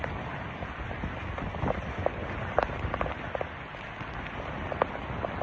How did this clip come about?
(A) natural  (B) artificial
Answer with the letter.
A